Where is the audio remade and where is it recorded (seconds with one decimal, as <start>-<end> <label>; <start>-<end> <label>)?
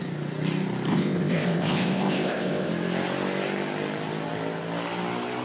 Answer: 0.0-0.9 recorded; 0.9-2.7 remade; 2.7-5.4 recorded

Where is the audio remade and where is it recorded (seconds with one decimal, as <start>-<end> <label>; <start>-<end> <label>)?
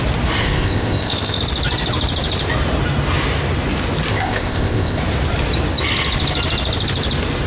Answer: 0.0-0.4 recorded; 0.4-1.4 remade; 1.4-4.1 recorded; 4.1-5.0 remade; 5.0-7.5 recorded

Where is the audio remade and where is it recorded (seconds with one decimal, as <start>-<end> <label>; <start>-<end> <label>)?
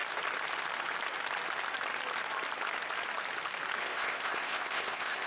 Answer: 0.0-3.8 recorded; 3.8-5.3 remade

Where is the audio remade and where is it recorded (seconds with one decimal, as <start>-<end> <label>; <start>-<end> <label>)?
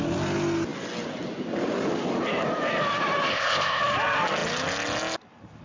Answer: 0.0-3.3 recorded; 3.3-3.8 remade; 3.8-5.6 recorded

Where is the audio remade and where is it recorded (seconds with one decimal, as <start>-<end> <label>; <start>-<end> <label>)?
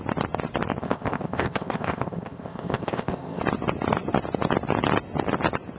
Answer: 0.0-0.8 recorded; 0.8-3.4 remade; 3.4-5.8 recorded